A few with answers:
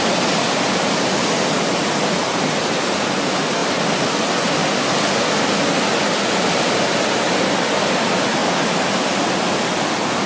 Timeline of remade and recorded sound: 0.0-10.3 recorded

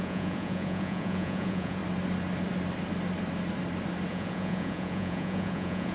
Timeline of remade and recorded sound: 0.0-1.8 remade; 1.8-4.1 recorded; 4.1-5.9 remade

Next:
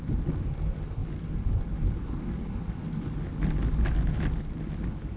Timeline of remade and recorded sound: 0.0-5.2 recorded

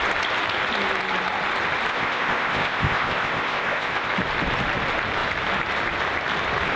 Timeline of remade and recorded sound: 0.0-1.9 recorded; 1.9-4.1 remade; 4.1-6.8 recorded

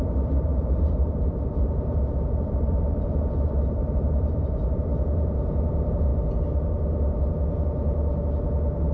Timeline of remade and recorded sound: 0.0-6.1 remade; 6.1-8.9 recorded

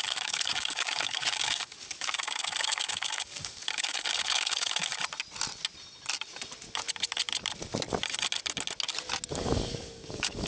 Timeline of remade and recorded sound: 0.0-4.9 remade; 4.9-9.3 recorded; 9.3-10.5 remade